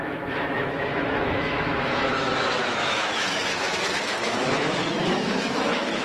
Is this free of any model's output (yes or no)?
no